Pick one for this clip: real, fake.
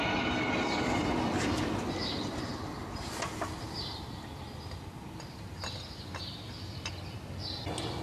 real